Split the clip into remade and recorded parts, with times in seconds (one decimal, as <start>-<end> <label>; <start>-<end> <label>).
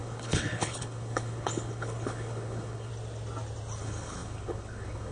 0.0-2.9 remade; 2.9-3.8 recorded; 3.8-5.1 remade